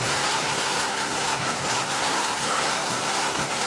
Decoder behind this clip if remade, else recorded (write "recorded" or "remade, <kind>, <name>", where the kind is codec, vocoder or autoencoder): remade, codec, SNAC